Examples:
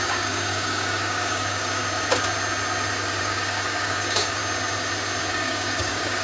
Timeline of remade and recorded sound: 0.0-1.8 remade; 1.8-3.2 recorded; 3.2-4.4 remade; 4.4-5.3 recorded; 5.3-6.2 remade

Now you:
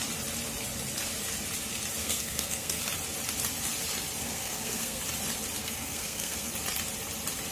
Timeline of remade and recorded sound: 0.0-2.0 recorded; 2.0-2.8 remade; 2.8-4.2 recorded; 4.2-5.0 remade; 5.0-5.6 recorded; 5.6-6.5 remade; 6.5-7.5 recorded